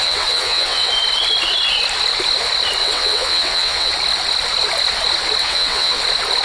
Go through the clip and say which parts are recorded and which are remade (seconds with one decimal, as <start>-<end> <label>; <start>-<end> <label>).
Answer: 0.0-0.9 remade; 0.9-2.8 recorded; 2.8-3.9 remade; 3.9-5.4 recorded; 5.4-6.0 remade; 6.0-6.4 recorded